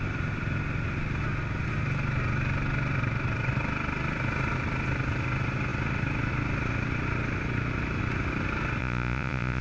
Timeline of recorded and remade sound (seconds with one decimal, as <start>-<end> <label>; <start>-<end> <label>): 0.0-8.8 recorded; 8.8-9.6 remade